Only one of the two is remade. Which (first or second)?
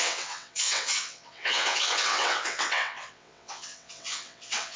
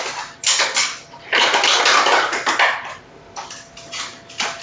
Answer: first